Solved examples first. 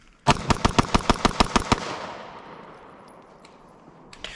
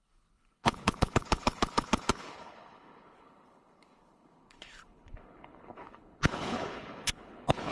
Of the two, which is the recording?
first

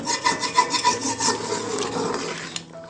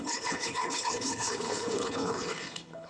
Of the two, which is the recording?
first